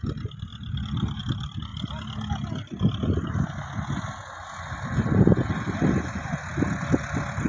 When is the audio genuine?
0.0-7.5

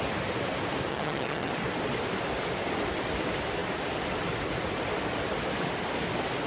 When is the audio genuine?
0.0-0.9; 1.5-6.5

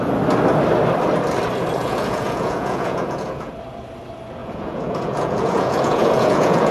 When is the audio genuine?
0.0-1.8; 3.5-4.4

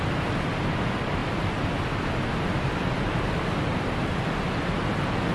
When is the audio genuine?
0.0-5.3